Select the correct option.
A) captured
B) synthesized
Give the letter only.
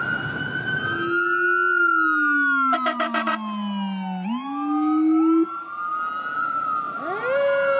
A